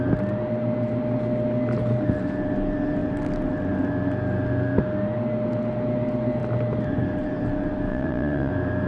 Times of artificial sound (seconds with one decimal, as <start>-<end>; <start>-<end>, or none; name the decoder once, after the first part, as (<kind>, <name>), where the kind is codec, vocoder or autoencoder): 7.9-8.5 (vocoder, Vocos)